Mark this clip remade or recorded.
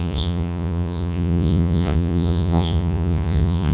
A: remade